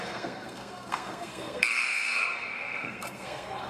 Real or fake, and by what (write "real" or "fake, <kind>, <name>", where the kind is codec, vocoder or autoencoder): fake, codec, SNAC